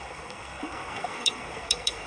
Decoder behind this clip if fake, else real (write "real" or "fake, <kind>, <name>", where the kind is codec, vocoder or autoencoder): fake, codec, SNAC